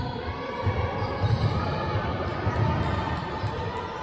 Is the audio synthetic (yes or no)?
no